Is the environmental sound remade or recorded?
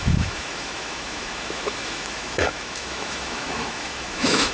remade